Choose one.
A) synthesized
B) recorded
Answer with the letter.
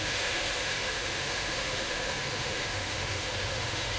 A